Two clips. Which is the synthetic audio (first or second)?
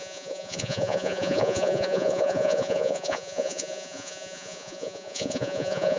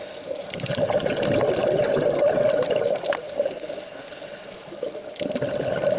first